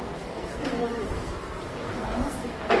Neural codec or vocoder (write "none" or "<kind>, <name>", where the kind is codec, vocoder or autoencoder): codec, SNAC